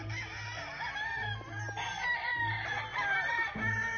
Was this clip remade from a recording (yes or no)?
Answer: no